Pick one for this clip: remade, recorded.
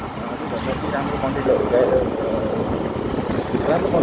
recorded